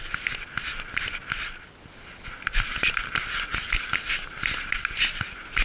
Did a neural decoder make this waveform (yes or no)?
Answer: no